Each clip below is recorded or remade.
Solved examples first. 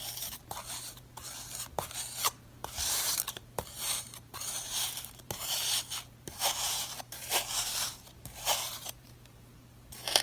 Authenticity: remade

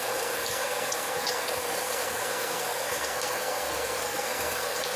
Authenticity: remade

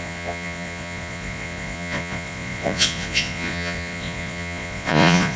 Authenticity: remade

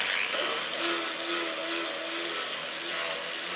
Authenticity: recorded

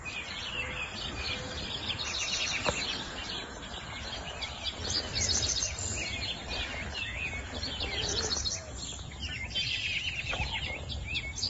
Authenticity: recorded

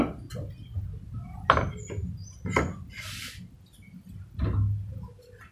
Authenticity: recorded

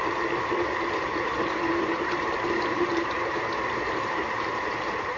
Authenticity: remade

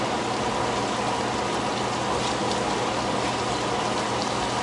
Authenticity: recorded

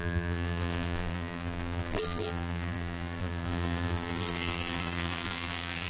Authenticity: remade